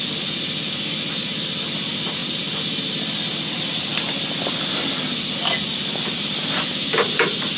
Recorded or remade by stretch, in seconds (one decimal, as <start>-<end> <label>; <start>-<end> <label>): 0.0-7.6 recorded